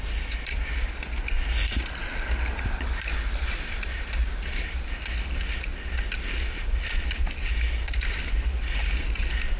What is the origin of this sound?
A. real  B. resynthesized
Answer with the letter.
A